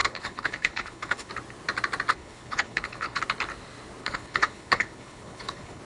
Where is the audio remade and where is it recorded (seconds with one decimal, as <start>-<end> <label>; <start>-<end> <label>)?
0.0-1.3 remade; 1.3-2.1 recorded; 2.1-3.2 remade; 3.2-4.0 recorded; 4.0-5.8 remade

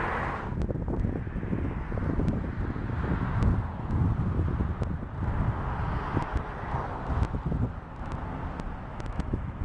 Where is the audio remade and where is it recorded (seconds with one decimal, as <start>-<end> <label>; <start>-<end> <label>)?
0.0-8.9 recorded; 8.9-9.6 remade

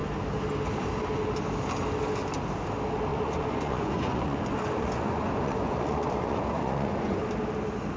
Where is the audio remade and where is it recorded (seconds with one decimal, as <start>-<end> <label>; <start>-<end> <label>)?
0.0-3.1 recorded; 3.1-7.2 remade; 7.2-8.0 recorded